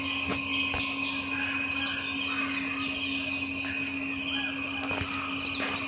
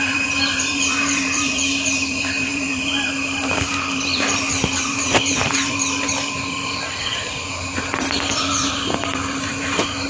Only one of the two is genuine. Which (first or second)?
first